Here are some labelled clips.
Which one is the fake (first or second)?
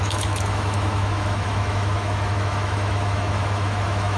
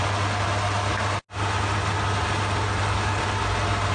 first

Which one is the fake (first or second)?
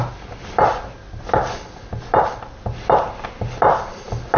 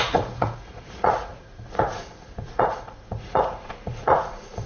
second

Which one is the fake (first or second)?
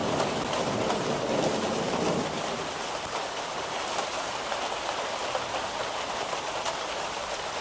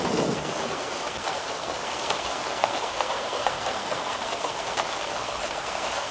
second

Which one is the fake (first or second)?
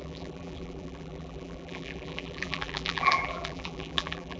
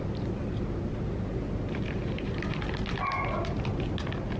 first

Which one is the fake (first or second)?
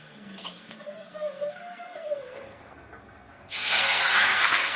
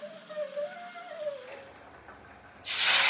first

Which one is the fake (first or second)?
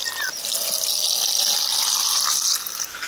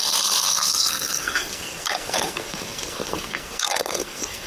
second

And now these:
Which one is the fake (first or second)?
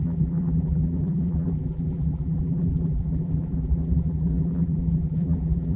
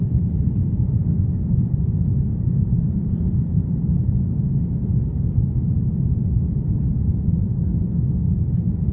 first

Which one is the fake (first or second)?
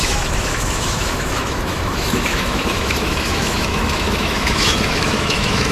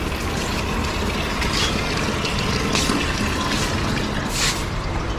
first